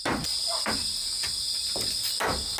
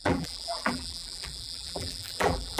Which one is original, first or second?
first